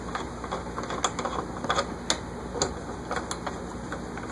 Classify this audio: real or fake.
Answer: real